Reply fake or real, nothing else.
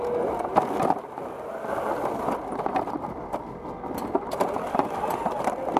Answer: real